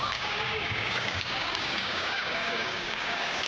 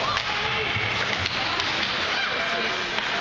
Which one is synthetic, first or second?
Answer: first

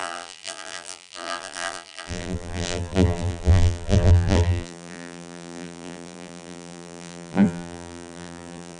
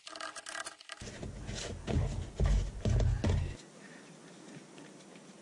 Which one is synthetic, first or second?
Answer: first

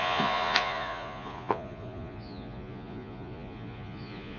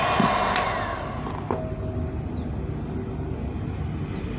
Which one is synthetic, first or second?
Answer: first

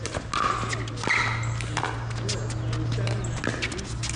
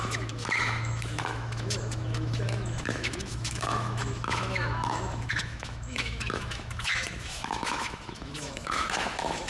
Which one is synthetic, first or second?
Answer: second